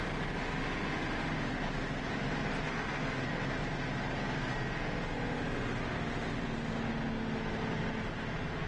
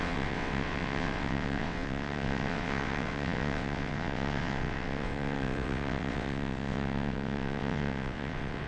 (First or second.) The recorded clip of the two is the first